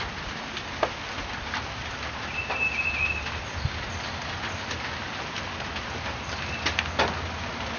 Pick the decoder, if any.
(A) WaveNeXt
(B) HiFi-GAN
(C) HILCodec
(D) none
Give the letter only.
D